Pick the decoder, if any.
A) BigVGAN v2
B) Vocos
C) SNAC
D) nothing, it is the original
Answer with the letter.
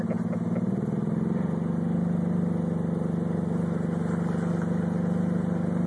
D